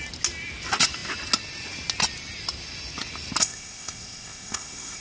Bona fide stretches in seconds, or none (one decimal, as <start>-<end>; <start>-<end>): 0.0-3.4